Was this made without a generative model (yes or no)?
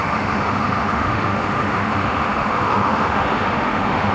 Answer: no